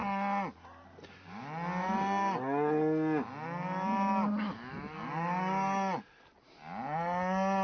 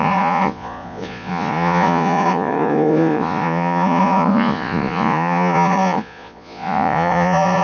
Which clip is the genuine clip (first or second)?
first